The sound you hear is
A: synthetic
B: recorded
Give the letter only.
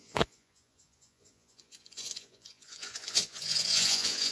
A